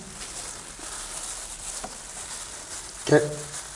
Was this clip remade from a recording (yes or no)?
no